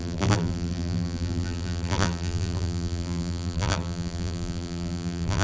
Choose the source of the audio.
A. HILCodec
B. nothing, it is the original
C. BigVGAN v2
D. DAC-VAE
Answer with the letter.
C